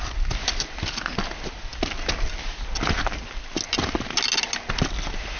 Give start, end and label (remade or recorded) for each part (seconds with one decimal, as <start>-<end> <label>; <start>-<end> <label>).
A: 0.0-5.4 recorded